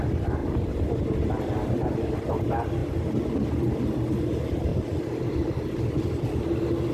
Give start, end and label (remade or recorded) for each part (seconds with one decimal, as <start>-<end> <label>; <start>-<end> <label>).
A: 0.0-6.9 recorded